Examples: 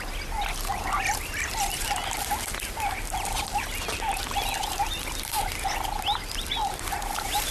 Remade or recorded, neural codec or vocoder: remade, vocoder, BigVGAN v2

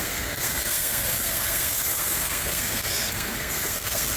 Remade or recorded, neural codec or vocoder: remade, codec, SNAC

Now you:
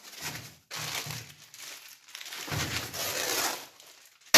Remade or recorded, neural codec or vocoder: recorded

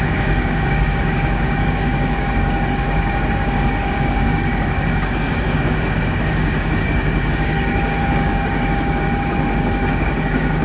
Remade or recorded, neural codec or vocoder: remade, codec, DAC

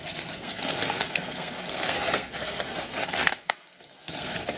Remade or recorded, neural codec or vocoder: remade, codec, SNAC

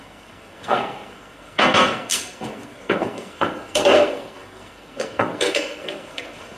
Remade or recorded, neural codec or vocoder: remade, codec, SNAC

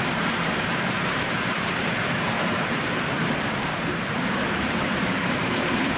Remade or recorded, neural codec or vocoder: remade, vocoder, BigVGAN v2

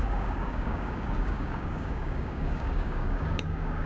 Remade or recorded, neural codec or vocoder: remade, codec, DAC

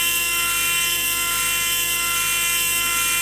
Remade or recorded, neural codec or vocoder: recorded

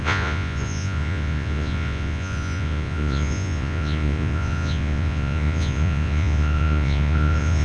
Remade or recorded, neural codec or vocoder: remade, vocoder, Vocos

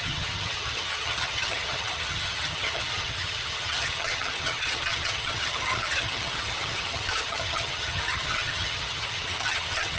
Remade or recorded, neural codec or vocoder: remade, vocoder, HiFi-GAN